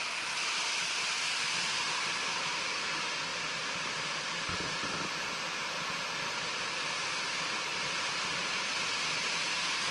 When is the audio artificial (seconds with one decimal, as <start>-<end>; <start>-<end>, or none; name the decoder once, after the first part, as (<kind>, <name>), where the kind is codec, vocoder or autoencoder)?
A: 3.3-4.9 (vocoder, BigVGAN v2)